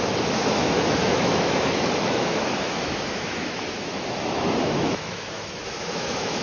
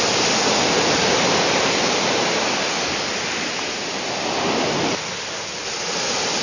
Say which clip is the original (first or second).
second